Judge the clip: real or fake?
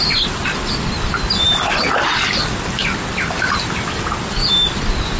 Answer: real